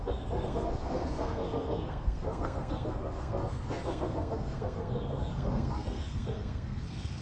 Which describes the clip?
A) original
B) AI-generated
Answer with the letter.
B